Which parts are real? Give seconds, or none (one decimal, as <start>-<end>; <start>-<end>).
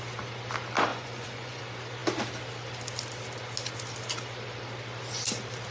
0.0-0.9; 1.6-5.7